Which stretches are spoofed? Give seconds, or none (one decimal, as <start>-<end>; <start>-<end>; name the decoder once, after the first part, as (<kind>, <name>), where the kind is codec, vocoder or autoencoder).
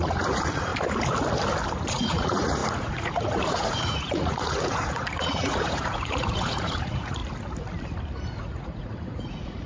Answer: 0.0-0.7 (vocoder, Vocos); 1.9-7.2; 8.4-9.7